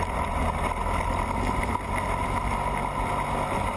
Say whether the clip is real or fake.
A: real